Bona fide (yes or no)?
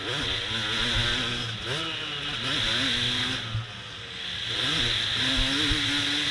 yes